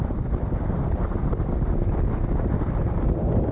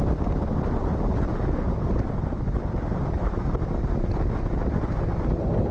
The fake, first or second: first